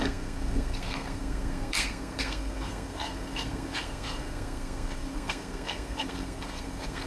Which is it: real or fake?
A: fake